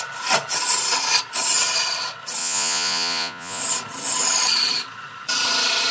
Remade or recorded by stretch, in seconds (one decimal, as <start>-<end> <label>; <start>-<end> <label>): 0.0-2.4 recorded; 2.4-3.6 remade; 3.6-5.9 recorded